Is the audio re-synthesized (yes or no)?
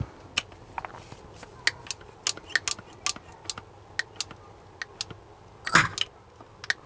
no